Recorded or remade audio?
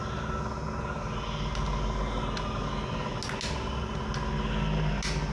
recorded